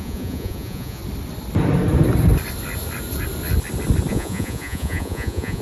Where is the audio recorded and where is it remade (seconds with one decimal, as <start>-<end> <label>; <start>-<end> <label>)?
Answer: 0.0-1.0 remade; 1.0-4.1 recorded; 4.1-5.6 remade